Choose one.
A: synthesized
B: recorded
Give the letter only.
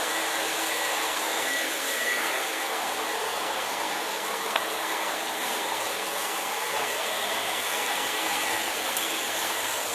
A